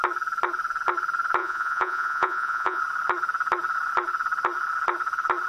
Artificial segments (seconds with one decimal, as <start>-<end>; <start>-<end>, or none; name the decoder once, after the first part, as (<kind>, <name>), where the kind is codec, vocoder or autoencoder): 1.4-2.8 (vocoder, Vocos)